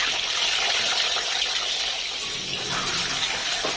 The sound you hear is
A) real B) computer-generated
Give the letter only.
A